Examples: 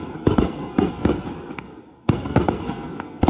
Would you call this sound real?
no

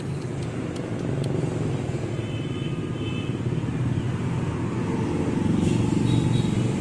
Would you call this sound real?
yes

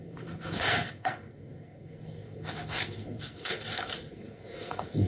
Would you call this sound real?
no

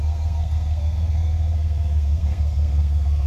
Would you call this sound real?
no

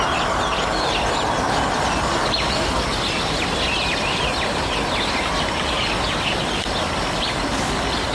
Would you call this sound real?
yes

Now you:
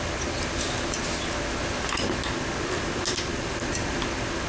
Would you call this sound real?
yes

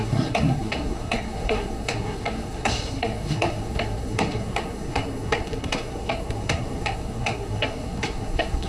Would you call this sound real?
no